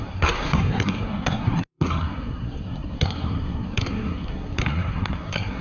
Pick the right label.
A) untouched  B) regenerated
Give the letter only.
B